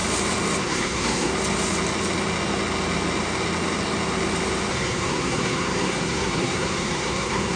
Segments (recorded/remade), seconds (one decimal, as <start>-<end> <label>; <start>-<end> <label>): 0.0-0.6 recorded; 0.6-1.3 remade; 1.3-4.7 recorded; 4.7-7.6 remade